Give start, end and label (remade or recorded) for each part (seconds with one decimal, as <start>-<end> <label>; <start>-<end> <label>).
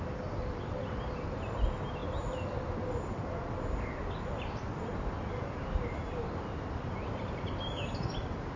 0.0-8.6 recorded